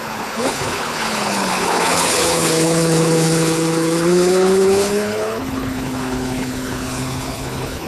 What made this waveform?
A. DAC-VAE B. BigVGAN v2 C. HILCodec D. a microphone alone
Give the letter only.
C